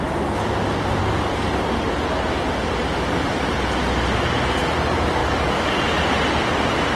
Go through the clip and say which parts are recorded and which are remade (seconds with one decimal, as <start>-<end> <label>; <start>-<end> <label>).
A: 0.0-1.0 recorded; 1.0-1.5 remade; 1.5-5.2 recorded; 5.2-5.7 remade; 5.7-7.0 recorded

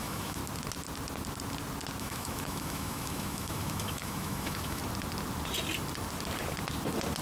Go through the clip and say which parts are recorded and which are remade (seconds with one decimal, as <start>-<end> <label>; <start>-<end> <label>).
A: 0.0-0.4 remade; 0.4-2.0 recorded; 2.0-4.8 remade; 4.8-7.2 recorded

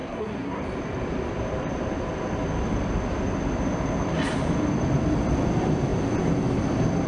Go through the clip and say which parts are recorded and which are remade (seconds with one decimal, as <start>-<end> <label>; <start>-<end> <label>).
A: 0.0-0.6 remade; 0.6-7.1 recorded

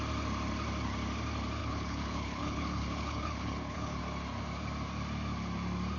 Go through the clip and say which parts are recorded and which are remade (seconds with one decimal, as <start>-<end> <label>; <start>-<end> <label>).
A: 0.0-1.6 recorded; 1.6-4.0 remade; 4.0-6.0 recorded

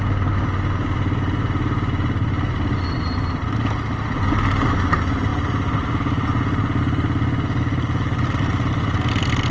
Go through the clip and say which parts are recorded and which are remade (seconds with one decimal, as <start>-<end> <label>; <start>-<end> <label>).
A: 0.0-9.5 recorded